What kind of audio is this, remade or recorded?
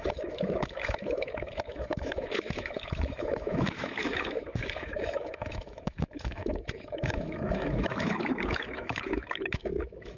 remade